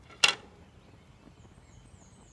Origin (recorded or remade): recorded